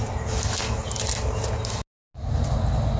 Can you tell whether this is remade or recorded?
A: recorded